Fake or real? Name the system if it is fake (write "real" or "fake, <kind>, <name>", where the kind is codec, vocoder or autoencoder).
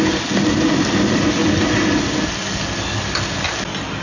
real